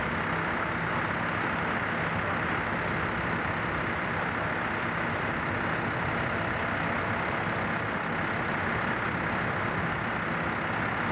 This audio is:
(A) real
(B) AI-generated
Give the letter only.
A